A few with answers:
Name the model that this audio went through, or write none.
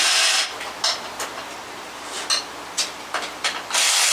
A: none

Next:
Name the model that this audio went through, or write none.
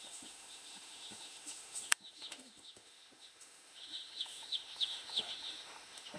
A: autoencoder, DAC-VAE